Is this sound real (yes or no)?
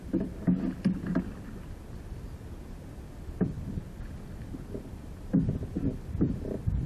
yes